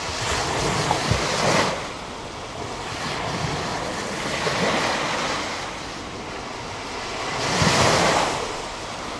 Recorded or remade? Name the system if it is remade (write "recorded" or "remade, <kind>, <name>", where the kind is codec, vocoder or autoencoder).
recorded